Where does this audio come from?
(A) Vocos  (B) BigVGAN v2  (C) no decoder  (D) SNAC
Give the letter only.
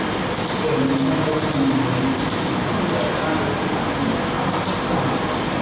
C